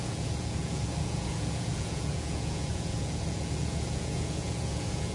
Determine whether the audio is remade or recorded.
remade